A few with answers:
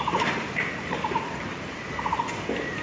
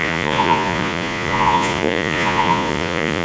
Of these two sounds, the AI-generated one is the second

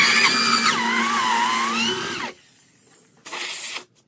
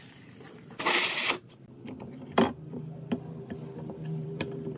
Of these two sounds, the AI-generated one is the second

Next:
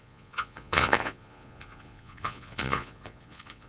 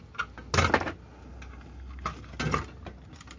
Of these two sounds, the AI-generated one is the first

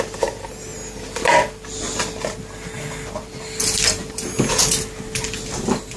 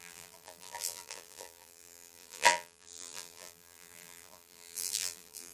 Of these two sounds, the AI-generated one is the second